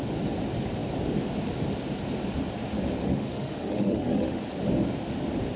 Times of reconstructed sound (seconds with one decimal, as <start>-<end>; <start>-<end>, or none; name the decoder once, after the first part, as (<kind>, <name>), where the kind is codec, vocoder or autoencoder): 3.0-4.4 (autoencoder, DAC-VAE)